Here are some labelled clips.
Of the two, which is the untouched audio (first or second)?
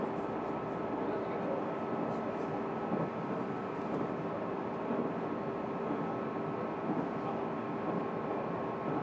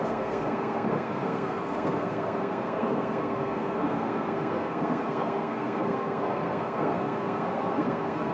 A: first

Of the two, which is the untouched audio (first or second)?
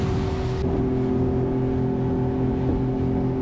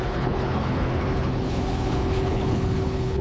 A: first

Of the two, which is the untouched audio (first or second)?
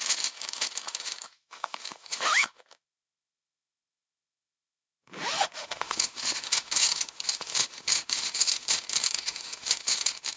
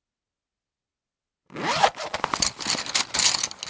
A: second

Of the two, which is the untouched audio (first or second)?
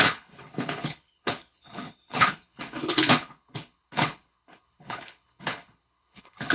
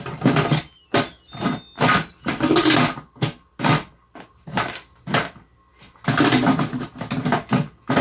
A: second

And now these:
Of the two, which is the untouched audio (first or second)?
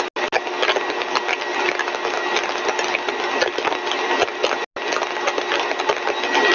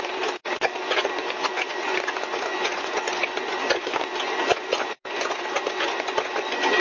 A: first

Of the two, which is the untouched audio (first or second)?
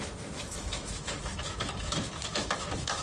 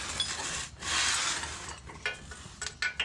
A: second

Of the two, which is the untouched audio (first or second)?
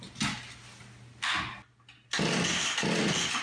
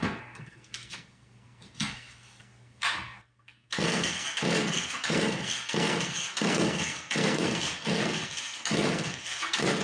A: first